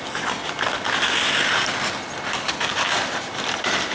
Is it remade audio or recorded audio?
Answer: recorded